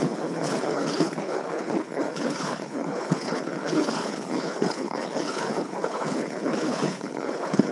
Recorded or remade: remade